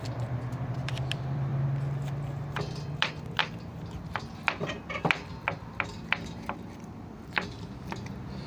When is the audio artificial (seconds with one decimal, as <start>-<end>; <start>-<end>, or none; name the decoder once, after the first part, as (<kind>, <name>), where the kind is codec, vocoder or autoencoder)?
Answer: 0.0-1.5 (vocoder, BigVGAN v2); 2.5-3.4; 4.7-8.5